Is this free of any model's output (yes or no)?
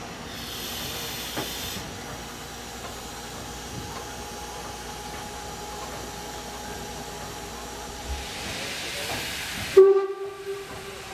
yes